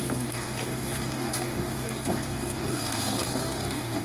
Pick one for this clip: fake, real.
fake